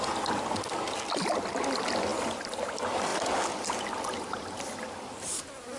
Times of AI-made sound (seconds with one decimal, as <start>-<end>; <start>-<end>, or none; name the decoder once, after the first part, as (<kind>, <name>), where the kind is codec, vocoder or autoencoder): none